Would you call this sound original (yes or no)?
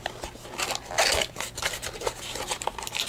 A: yes